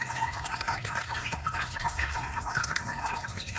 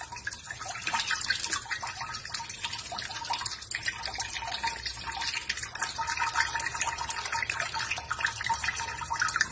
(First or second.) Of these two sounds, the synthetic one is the first